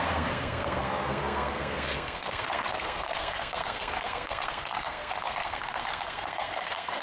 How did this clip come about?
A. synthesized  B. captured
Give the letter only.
A